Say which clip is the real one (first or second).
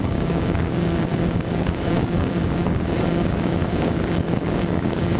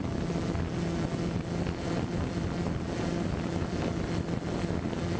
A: second